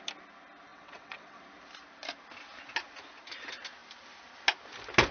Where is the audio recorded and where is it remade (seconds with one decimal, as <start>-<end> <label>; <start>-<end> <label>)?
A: 0.0-0.7 recorded; 0.7-1.4 remade; 1.4-5.1 recorded